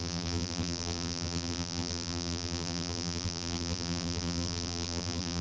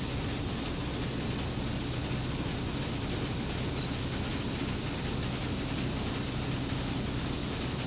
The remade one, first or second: first